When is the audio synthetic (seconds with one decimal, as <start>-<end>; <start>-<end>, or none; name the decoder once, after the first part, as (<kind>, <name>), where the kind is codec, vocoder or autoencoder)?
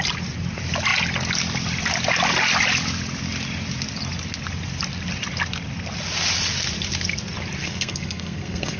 7.6-8.8 (codec, SNAC)